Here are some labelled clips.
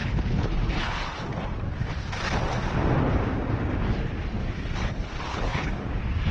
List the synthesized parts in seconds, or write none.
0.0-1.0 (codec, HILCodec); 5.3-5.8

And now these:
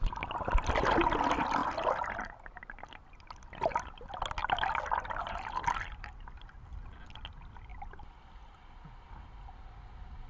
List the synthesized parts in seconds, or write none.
none

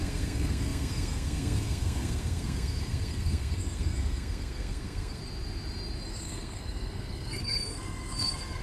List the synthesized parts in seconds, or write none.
0.0-5.2 (codec, SNAC); 6.1-8.6

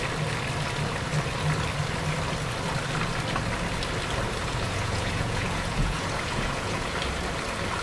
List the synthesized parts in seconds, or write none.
4.4-6.9 (vocoder, Vocos)

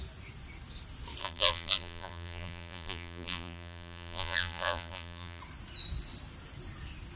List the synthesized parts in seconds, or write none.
1.2-5.4 (vocoder, BigVGAN v2)